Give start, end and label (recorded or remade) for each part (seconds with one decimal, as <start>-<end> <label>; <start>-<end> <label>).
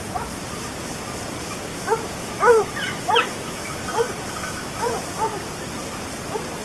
0.0-1.7 recorded; 1.7-3.8 remade; 3.8-4.4 recorded; 4.4-4.9 remade; 4.9-6.6 recorded